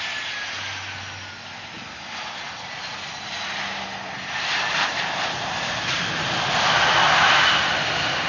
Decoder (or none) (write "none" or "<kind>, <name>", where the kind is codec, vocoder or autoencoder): none